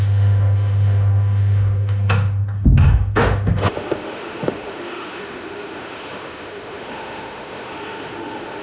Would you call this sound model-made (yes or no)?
yes